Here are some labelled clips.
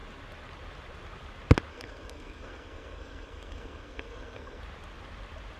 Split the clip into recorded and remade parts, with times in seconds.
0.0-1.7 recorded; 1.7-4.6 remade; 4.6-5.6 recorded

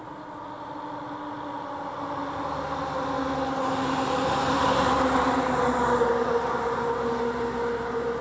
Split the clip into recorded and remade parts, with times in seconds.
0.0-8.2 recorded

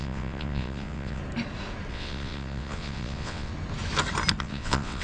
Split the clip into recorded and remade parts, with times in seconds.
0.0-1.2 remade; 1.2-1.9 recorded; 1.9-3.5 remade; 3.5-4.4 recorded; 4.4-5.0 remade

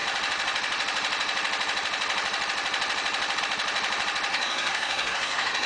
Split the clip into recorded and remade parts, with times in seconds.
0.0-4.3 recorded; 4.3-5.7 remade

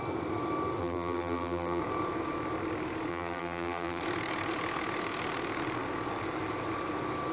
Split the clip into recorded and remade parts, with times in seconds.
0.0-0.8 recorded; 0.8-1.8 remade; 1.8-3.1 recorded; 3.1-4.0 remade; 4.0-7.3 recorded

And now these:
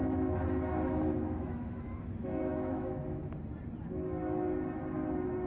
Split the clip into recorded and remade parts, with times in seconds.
0.0-3.3 remade; 3.3-5.5 recorded

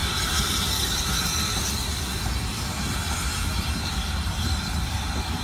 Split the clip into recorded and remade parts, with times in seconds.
0.0-5.4 recorded

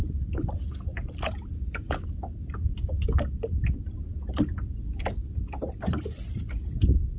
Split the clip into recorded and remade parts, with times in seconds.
0.0-7.2 recorded